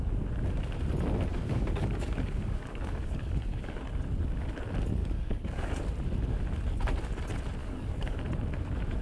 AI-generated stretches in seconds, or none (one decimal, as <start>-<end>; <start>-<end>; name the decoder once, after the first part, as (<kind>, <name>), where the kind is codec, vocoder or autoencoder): 1.3-3.8 (codec, DAC); 5.0-5.7; 7.6-8.2